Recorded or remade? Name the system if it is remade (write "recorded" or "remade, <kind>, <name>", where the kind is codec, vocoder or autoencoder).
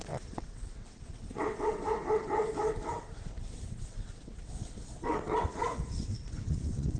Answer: remade, vocoder, WaveNeXt